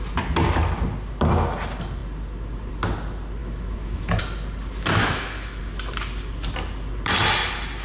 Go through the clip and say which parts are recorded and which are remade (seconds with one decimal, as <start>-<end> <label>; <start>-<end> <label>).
0.0-3.4 recorded; 3.4-4.2 remade; 4.2-5.0 recorded; 5.0-5.6 remade; 5.6-7.8 recorded